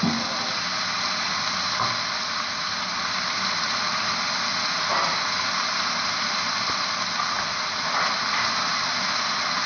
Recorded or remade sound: recorded